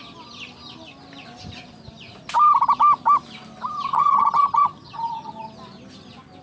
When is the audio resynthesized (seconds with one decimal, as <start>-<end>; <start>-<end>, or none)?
3.9-5.3